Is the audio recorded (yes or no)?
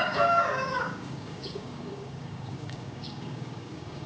no